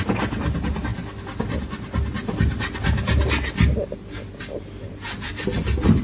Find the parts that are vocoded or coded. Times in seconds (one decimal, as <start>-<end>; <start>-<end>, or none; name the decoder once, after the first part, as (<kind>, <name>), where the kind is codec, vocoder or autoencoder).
none